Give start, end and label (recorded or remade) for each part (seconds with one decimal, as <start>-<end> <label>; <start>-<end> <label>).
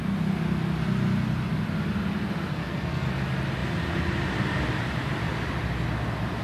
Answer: 0.0-2.5 recorded; 2.5-3.1 remade; 3.1-6.4 recorded